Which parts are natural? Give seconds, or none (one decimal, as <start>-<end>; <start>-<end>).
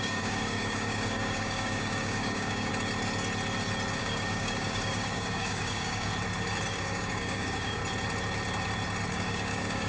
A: 2.7-4.0; 6.1-6.7; 7.8-9.1